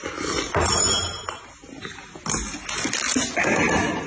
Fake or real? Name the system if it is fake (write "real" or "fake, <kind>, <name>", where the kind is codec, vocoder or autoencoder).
real